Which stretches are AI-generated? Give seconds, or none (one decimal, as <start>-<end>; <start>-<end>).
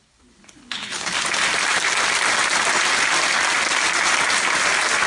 0.4-1.1